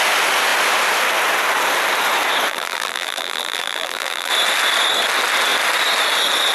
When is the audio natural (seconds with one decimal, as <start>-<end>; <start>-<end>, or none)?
0.0-2.5; 4.3-6.5